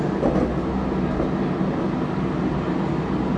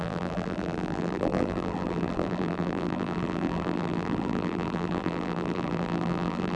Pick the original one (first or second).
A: first